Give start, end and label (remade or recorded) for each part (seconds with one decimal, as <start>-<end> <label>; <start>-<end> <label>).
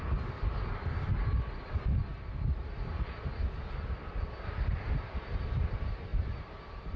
0.0-7.0 recorded